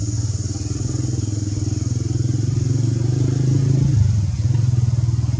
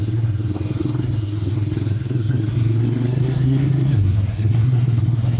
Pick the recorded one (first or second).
first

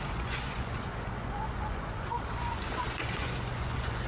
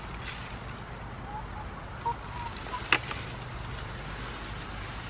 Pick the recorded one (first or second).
second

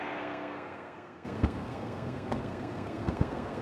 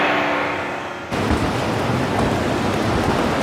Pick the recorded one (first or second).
second